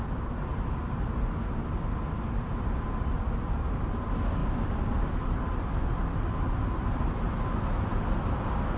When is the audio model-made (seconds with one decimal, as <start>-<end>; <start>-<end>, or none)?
none